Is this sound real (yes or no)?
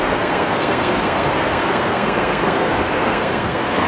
no